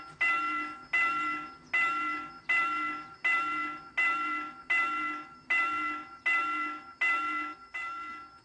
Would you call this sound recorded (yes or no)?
yes